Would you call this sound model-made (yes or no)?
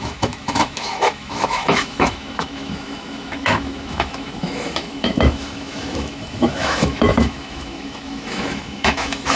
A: yes